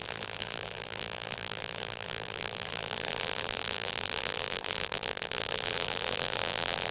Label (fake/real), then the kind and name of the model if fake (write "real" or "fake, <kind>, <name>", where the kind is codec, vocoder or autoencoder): fake, vocoder, BigVGAN v2